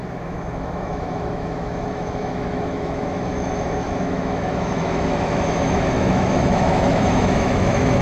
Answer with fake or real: fake